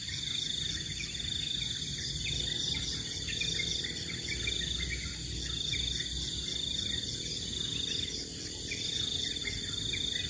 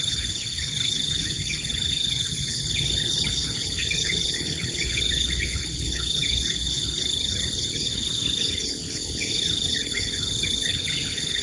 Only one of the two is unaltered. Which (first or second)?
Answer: first